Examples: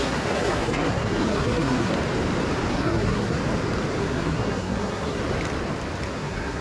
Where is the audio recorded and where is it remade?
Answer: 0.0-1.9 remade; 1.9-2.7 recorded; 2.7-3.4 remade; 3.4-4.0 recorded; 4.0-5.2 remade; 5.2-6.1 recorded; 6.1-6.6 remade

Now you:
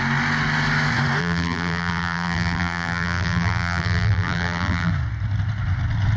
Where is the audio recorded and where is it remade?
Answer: 0.0-1.2 recorded; 1.2-4.9 remade; 4.9-6.2 recorded